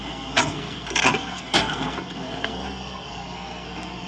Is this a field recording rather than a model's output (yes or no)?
no